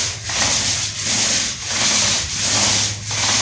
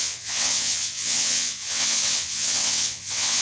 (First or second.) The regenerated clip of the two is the second